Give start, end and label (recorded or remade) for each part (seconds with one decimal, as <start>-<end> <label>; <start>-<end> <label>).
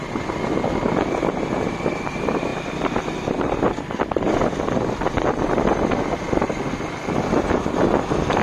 0.0-8.4 recorded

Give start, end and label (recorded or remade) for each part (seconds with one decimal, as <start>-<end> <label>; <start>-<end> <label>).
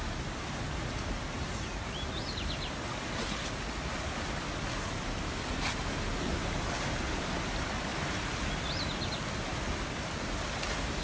0.0-11.0 recorded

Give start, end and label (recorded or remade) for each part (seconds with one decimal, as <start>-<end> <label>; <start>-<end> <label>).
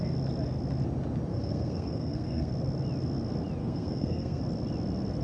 0.0-1.3 recorded; 1.3-2.5 remade; 2.5-3.6 recorded; 3.6-4.4 remade; 4.4-5.2 recorded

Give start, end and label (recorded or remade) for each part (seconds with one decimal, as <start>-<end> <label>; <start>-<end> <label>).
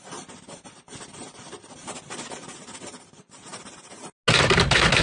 0.0-5.0 recorded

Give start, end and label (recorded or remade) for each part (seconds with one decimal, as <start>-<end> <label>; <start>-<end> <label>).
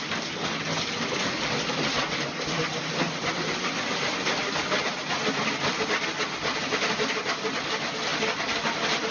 0.0-9.1 recorded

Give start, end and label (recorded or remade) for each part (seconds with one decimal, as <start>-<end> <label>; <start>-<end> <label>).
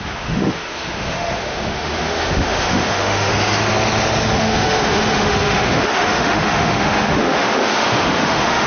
0.0-3.3 remade; 3.3-4.4 recorded; 4.4-8.7 remade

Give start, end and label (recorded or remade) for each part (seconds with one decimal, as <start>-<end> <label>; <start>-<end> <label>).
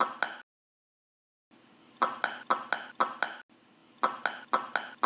0.0-5.1 recorded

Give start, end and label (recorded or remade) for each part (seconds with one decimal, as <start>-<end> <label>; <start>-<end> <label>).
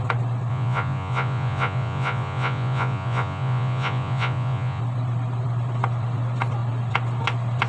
0.0-0.5 recorded; 0.5-4.8 remade; 4.8-7.7 recorded